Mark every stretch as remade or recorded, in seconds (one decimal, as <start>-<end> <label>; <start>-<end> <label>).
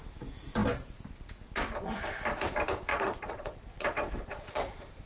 0.0-2.9 recorded; 2.9-5.1 remade